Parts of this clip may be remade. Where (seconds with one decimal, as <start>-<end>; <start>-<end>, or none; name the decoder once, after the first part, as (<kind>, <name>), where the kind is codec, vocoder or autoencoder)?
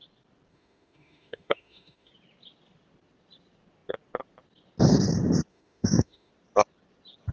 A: 0.5-2.1 (autoencoder, DAC-VAE); 5.5-6.3